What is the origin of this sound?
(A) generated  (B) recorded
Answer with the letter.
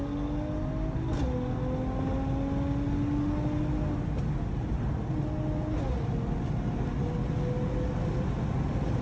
B